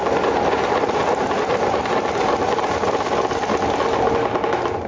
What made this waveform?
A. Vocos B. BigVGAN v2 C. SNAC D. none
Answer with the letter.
D